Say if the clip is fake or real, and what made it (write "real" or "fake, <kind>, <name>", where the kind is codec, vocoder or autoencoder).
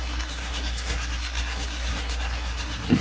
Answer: fake, codec, SNAC